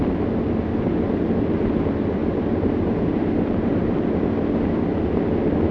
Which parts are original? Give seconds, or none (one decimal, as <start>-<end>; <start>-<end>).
0.0-2.2; 4.3-5.7